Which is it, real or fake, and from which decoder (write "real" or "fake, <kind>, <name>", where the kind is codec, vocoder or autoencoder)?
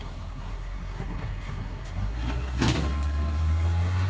fake, codec, SNAC